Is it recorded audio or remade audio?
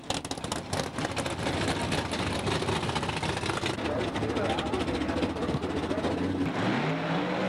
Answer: recorded